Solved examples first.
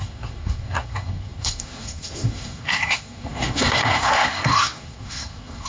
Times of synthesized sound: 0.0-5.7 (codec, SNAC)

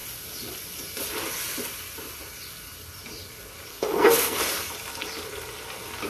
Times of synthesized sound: 3.7-4.4 (codec, SNAC)

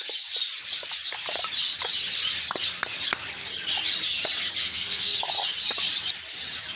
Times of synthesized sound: 4.6-5.2 (codec, SNAC)

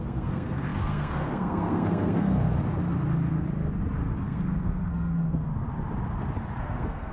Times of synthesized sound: 0.0-2.5 (codec, SNAC); 4.1-5.5; 6.6-7.1

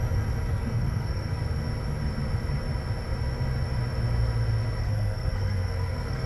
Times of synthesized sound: 0.5-1.3 (codec, SNAC); 4.8-6.3

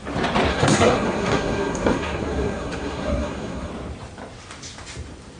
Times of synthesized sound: 0.5-3.7 (codec, SNAC)